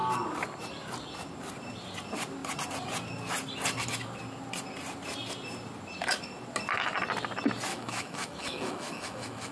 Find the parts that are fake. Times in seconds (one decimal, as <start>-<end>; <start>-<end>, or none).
7.7-9.5